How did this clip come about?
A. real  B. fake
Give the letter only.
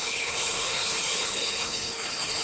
B